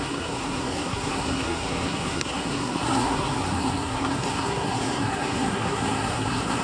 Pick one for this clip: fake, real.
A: fake